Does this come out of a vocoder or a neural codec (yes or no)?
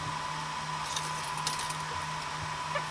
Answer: no